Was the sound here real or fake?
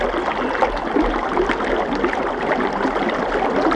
real